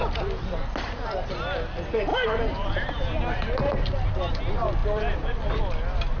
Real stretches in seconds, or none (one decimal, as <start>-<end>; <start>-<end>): 0.0-2.1; 4.1-4.8; 5.6-6.2